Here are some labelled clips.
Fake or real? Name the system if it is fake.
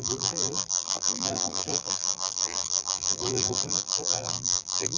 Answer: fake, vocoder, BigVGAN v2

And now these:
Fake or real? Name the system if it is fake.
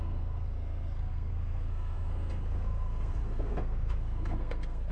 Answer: fake, codec, SNAC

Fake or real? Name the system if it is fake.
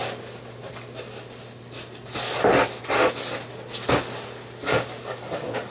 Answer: real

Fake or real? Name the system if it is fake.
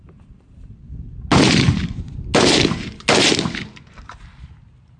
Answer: real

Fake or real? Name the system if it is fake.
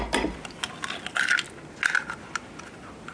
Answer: real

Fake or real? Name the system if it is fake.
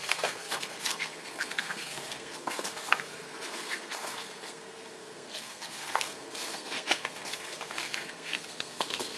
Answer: fake, codec, SNAC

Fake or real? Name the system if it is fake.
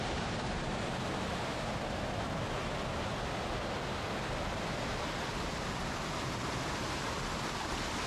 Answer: real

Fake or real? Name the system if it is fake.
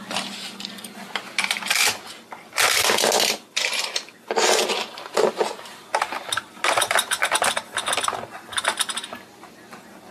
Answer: real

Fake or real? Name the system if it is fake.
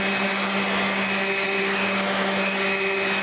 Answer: real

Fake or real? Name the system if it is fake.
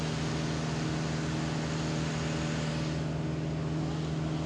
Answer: real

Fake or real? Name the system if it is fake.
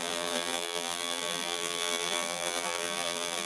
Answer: fake, vocoder, BigVGAN v2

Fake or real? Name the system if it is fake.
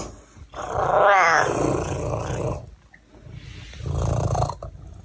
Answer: real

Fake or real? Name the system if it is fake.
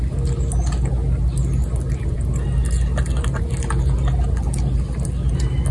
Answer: real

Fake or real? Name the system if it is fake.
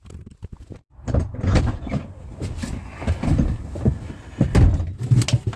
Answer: real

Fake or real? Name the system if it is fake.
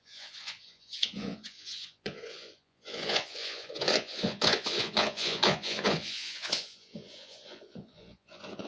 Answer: fake, vocoder, Vocos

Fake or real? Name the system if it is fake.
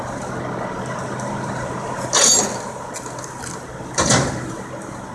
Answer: real